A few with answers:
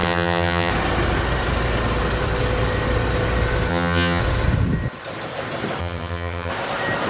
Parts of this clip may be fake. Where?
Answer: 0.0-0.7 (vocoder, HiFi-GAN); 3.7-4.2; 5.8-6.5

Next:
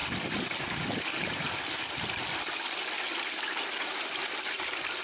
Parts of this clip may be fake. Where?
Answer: none

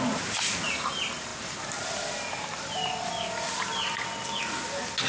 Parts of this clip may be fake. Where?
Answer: none

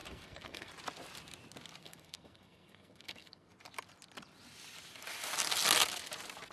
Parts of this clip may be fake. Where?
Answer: 0.0-0.7 (codec, SNAC); 1.8-3.5

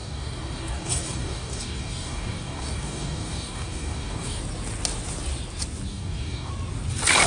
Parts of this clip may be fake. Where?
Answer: 0.0-4.4 (codec, DAC); 5.9-6.5

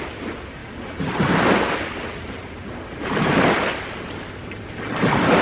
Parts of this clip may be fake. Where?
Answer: none

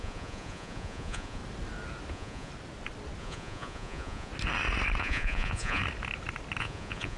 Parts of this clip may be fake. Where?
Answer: 0.0-1.4 (vocoder, Vocos); 2.1-2.5; 3.2-4.3; 5.0-5.8; 6.6-7.2